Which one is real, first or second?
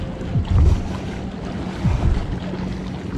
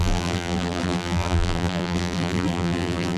first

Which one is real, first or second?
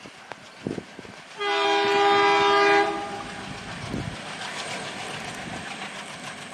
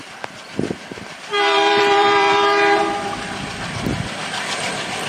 first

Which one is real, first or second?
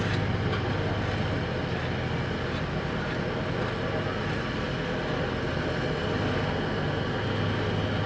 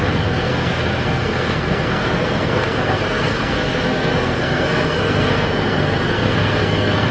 first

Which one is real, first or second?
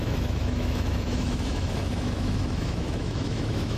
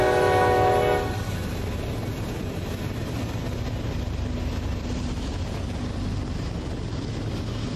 second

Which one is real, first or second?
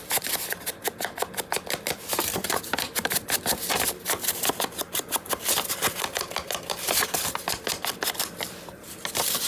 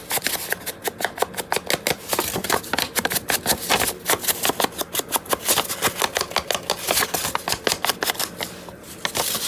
second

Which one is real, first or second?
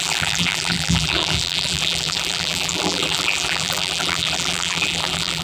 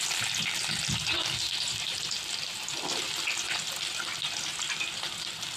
second